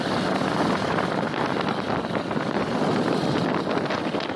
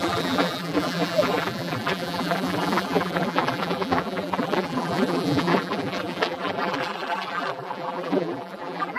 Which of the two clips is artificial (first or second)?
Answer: second